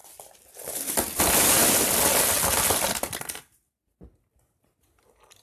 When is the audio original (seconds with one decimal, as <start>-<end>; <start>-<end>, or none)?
0.0-1.6; 2.6-5.4